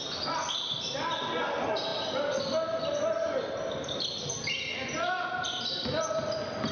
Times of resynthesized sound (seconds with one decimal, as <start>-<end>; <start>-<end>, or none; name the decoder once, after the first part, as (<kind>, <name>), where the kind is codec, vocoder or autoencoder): none